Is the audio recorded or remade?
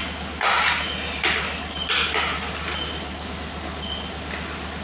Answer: recorded